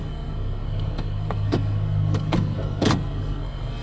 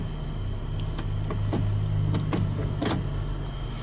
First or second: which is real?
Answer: second